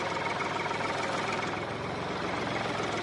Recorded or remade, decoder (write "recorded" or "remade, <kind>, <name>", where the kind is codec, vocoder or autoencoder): remade, vocoder, BigVGAN v2